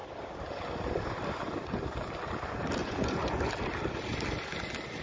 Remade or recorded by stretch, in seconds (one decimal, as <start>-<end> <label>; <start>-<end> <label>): 0.0-2.8 recorded; 2.8-3.5 remade; 3.5-5.0 recorded